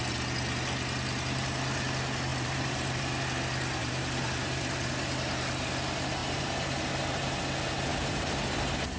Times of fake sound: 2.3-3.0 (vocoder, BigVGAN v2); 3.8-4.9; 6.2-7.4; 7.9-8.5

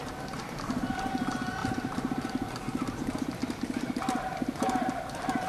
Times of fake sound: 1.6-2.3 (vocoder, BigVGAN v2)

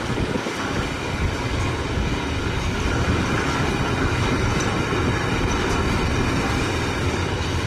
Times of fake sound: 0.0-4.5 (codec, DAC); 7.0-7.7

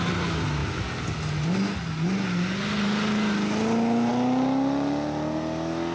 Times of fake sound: none

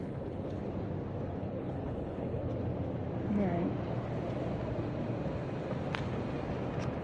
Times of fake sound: 0.0-0.6 (codec, HILCodec); 1.4-2.5

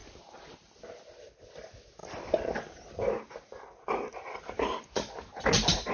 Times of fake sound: none

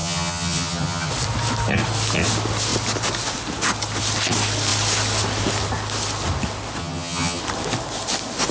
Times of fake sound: 0.0-1.1 (vocoder, HiFi-GAN); 6.8-7.4